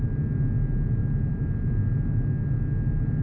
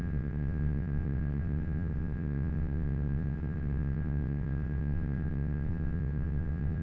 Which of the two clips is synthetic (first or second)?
second